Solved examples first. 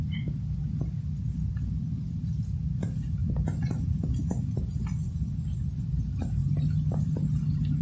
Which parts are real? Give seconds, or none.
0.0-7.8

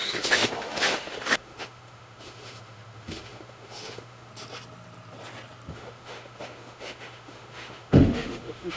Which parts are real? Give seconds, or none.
4.3-5.7

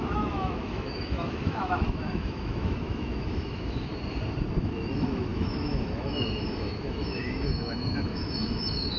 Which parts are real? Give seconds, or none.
3.9-4.6

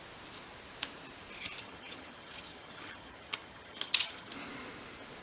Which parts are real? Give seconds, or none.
0.0-1.6; 4.3-5.2

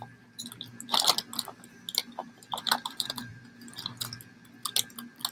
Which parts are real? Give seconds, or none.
0.0-2.2; 3.4-5.3

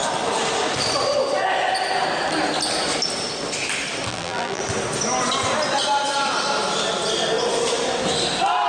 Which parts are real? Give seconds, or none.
0.0-4.1; 4.6-8.7

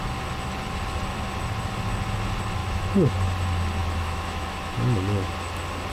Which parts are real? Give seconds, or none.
0.0-2.6; 3.1-3.8; 5.3-5.9